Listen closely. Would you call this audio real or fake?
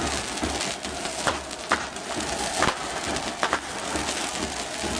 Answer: real